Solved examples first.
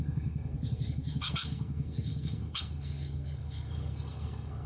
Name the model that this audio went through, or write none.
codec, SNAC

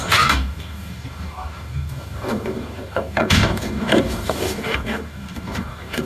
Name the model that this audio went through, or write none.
codec, DAC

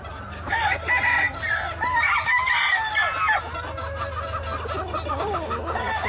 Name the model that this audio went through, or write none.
none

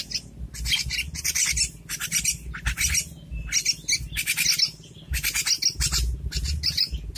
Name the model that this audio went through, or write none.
none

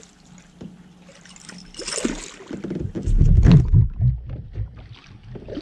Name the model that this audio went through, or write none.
none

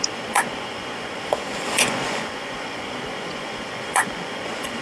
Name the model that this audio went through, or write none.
vocoder, Vocos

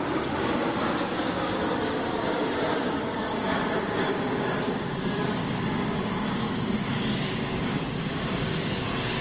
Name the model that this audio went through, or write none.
codec, DAC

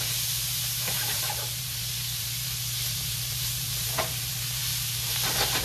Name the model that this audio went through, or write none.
vocoder, BigVGAN v2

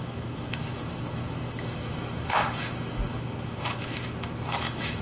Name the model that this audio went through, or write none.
autoencoder, DAC-VAE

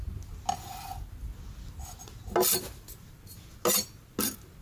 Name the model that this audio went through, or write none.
none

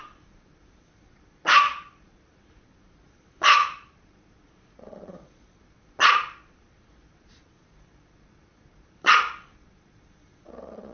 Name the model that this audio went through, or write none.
vocoder, Vocos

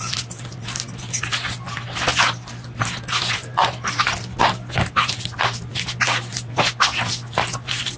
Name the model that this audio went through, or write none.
none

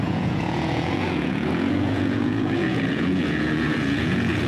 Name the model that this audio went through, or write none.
vocoder, Vocos